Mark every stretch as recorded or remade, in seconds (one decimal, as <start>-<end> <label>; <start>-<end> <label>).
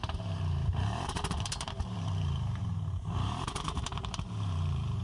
0.0-5.0 remade